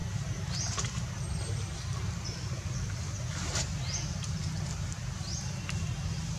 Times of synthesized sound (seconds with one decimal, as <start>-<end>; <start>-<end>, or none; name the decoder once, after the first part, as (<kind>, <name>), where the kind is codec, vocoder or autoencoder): none